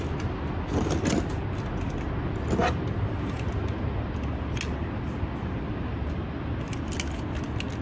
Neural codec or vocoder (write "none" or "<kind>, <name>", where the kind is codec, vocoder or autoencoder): none